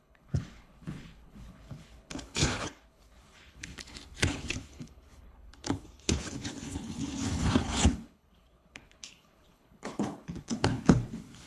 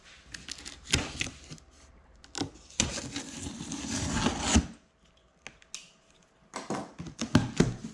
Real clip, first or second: second